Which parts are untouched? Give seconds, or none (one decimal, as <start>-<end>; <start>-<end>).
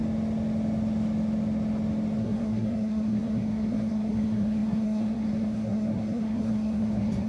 0.0-2.2